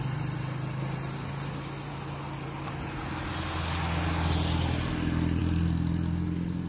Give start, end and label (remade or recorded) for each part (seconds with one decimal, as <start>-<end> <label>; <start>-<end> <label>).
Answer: 0.0-6.7 recorded